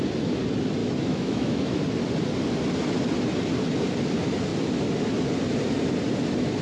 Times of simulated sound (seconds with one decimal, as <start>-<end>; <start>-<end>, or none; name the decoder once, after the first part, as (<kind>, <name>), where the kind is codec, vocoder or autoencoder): 0.8-1.8 (autoencoder, DAC-VAE)

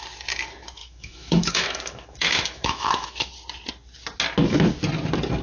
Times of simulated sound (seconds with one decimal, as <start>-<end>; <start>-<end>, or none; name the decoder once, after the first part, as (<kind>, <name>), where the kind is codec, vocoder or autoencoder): 0.8-3.3 (autoencoder, DAC-VAE)

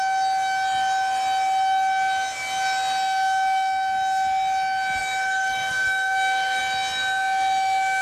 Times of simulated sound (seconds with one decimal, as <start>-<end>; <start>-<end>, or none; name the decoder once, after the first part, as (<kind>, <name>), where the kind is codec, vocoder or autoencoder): 5.0-6.6 (autoencoder, DAC-VAE)

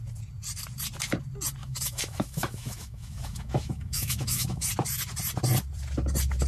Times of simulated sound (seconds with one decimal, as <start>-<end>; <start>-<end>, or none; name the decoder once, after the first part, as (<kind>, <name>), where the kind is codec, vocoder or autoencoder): 1.6-4.7 (autoencoder, DAC-VAE)